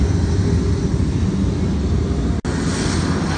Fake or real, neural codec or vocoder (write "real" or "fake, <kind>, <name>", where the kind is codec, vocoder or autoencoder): real